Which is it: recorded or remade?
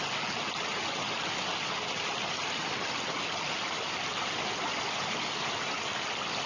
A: recorded